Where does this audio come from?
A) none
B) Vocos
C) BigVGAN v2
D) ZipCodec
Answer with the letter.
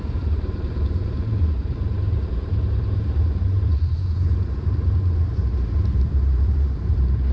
C